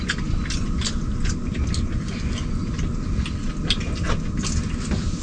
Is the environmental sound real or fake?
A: real